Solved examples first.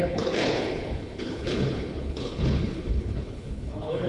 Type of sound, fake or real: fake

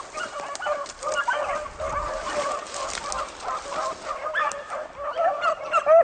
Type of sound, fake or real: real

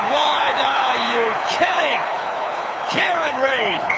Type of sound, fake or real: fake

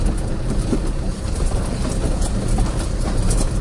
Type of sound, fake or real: real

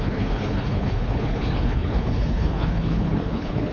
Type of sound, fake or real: fake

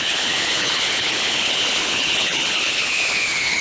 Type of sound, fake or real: fake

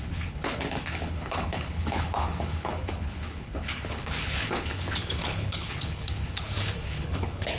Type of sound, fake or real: fake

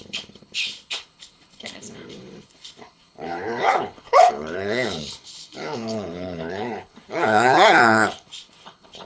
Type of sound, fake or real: fake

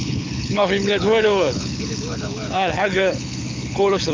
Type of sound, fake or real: fake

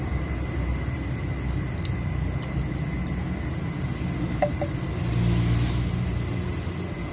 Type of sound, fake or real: real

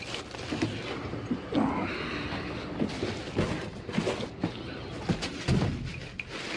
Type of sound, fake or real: real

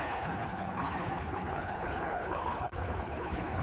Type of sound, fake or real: fake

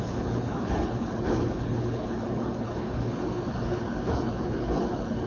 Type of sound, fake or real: fake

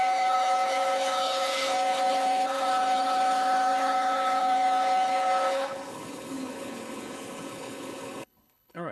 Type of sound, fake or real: fake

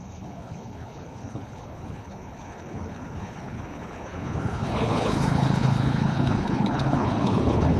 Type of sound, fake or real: fake